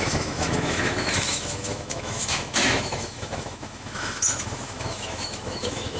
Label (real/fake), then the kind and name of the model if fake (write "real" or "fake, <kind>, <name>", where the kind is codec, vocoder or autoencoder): fake, autoencoder, DAC-VAE